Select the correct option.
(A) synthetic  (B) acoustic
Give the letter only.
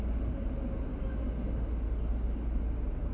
B